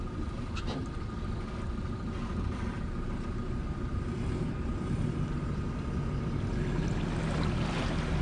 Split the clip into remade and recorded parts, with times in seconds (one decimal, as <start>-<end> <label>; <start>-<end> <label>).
0.0-8.2 recorded